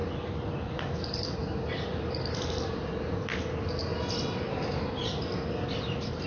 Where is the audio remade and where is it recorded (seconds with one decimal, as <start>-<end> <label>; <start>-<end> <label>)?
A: 0.0-1.4 recorded; 1.4-2.8 remade; 2.8-3.9 recorded; 3.9-6.3 remade